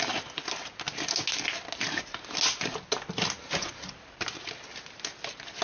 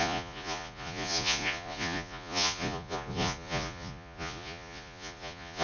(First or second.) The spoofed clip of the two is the second